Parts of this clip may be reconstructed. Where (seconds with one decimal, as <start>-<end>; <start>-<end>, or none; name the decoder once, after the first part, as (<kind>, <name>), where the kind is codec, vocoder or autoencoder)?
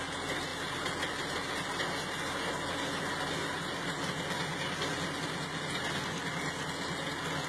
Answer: none